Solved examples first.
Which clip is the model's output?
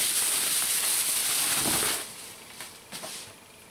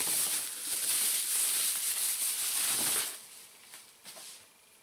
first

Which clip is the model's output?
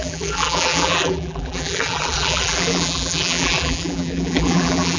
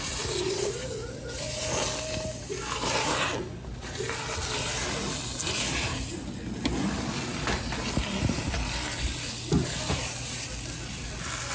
first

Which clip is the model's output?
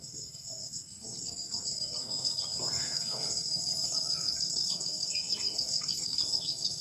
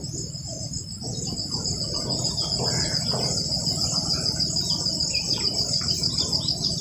first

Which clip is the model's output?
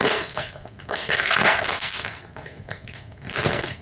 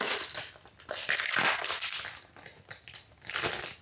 first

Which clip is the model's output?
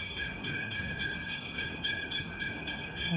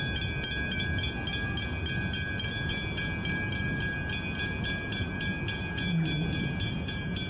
first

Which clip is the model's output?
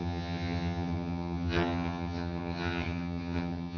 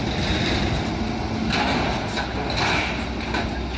first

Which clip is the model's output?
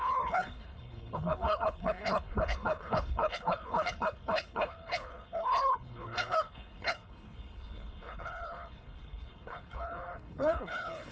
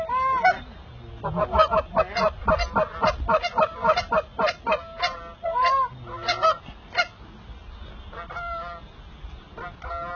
first